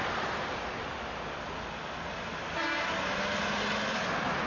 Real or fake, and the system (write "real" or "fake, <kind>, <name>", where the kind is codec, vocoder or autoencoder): real